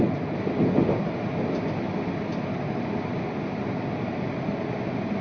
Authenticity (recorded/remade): recorded